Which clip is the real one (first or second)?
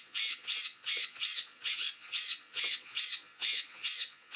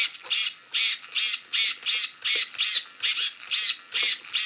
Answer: second